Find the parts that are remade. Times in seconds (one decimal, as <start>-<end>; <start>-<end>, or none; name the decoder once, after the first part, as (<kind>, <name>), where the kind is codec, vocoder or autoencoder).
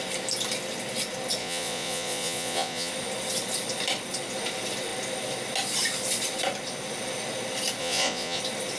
1.4-2.9 (vocoder, Vocos); 7.8-8.4